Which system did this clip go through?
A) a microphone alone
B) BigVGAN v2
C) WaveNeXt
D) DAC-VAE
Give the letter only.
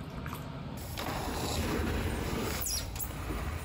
B